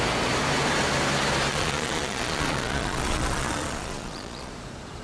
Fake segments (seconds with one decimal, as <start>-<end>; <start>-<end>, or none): 1.5-4.5